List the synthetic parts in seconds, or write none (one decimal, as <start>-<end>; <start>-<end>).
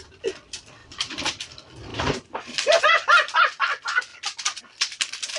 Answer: 0.8-1.4; 1.9-2.8